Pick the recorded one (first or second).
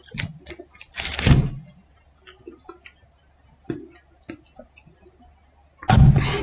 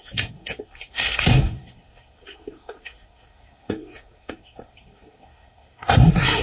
first